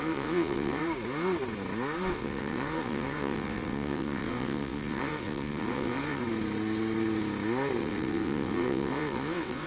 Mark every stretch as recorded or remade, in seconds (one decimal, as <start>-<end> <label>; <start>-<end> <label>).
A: 0.0-0.8 remade; 0.8-2.1 recorded; 2.1-6.2 remade; 6.2-7.8 recorded; 7.8-9.7 remade